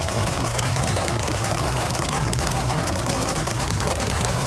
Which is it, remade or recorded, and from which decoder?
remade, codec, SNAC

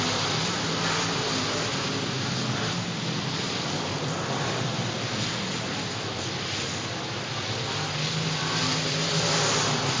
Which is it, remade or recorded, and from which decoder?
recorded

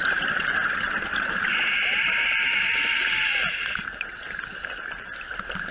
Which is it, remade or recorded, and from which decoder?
recorded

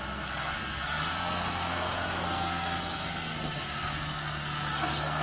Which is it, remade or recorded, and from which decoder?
remade, codec, SNAC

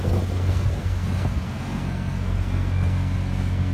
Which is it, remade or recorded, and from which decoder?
remade, codec, SNAC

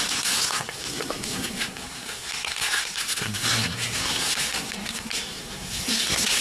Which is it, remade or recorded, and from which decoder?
remade, codec, SNAC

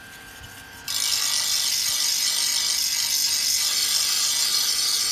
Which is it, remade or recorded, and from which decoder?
recorded